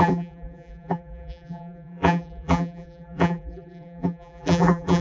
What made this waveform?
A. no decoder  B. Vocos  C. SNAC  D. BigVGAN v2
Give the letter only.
D